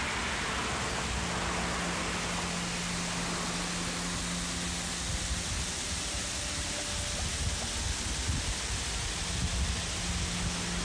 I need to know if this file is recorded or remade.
recorded